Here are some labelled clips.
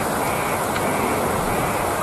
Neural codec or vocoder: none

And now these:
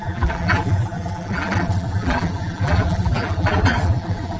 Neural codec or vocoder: vocoder, BigVGAN v2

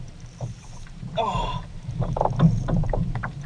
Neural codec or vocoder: vocoder, BigVGAN v2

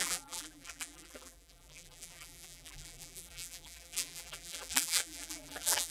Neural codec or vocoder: vocoder, BigVGAN v2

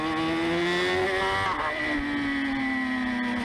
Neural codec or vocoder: none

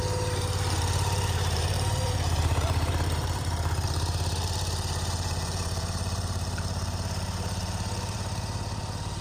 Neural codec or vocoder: vocoder, BigVGAN v2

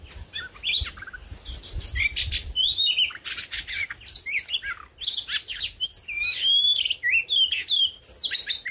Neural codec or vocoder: none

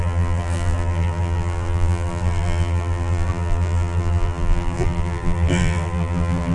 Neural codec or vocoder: vocoder, BigVGAN v2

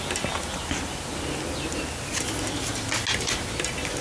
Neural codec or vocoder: none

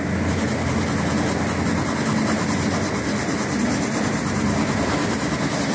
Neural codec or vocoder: none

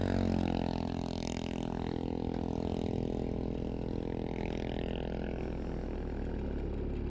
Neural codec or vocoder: none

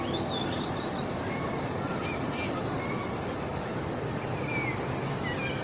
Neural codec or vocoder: none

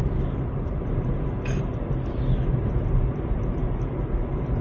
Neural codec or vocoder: none